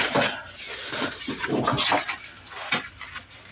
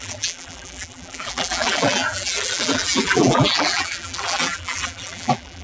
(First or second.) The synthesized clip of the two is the second